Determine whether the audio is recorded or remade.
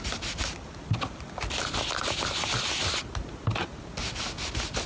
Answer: recorded